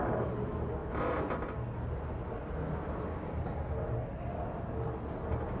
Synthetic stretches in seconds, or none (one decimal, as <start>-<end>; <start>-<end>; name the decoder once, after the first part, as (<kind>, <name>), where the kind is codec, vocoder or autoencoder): none